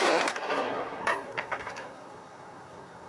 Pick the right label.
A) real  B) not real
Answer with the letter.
B